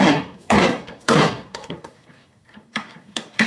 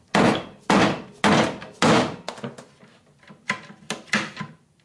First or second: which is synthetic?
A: first